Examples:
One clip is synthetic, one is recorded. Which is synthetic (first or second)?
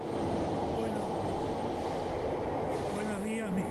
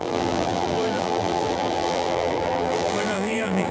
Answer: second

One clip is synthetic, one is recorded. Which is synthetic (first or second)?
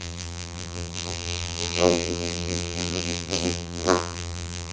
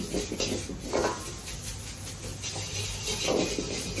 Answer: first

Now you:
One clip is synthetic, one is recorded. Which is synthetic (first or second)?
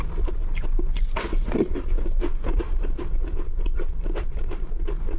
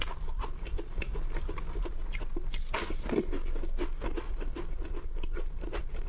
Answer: first